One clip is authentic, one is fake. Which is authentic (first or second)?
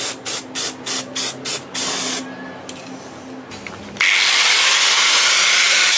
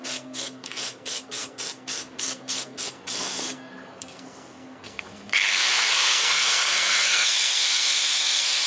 first